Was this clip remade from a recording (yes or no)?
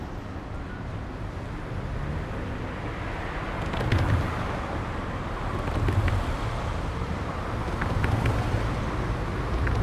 no